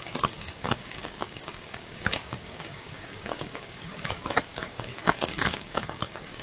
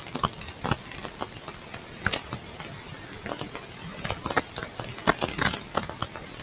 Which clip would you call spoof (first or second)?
first